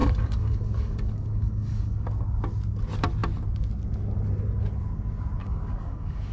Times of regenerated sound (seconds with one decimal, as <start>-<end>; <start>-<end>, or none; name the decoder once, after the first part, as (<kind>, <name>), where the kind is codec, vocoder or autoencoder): 0.0-2.1 (codec, DAC); 5.4-6.3